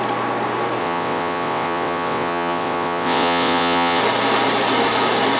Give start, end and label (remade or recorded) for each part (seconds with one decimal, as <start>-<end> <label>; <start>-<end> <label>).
0.0-0.8 recorded; 0.8-4.0 remade; 4.0-5.4 recorded

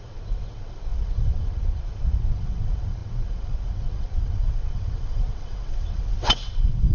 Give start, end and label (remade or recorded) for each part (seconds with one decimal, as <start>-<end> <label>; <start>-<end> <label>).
0.0-6.9 remade

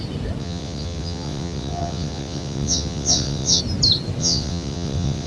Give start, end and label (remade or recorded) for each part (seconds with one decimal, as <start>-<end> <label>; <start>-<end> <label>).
0.0-0.4 recorded; 0.4-3.6 remade; 3.6-4.2 recorded; 4.2-5.3 remade

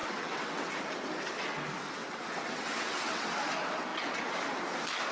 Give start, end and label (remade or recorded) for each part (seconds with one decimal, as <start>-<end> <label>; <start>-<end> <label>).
0.0-0.7 remade; 0.7-2.0 recorded; 2.0-3.3 remade; 3.3-5.1 recorded